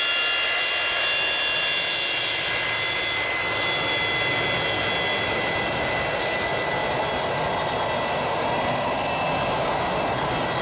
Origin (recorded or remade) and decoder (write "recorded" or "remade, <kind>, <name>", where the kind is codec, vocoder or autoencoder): recorded